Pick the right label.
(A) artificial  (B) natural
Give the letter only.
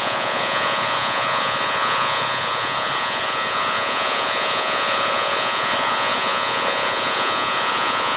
A